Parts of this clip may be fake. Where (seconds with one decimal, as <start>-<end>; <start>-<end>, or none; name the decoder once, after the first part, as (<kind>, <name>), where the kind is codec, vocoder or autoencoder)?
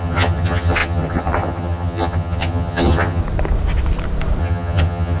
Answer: 0.0-3.2 (vocoder, HiFi-GAN); 4.4-5.2